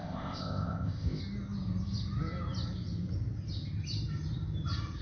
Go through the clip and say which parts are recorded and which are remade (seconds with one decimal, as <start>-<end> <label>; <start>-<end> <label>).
0.0-1.2 remade; 1.2-5.0 recorded